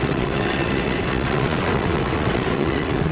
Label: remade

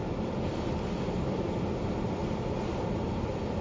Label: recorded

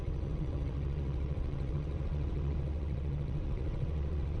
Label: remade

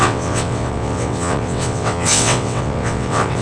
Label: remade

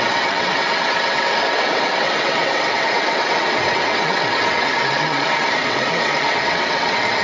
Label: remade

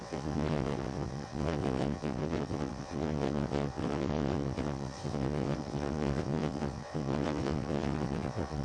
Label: remade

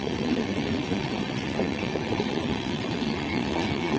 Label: remade